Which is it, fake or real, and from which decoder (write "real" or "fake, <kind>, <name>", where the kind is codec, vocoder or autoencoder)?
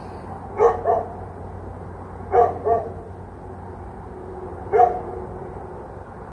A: real